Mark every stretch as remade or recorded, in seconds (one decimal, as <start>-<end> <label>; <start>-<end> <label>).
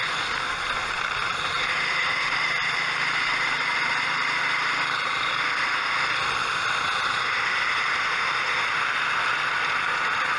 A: 0.0-10.4 recorded